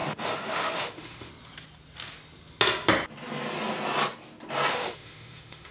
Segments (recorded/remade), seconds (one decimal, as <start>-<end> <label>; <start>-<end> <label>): 0.0-1.3 remade; 1.3-4.7 recorded; 4.7-5.7 remade